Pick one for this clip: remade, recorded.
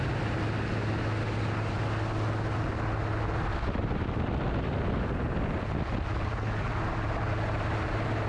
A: recorded